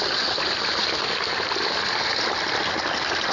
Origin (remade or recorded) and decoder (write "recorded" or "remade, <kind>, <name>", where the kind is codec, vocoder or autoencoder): recorded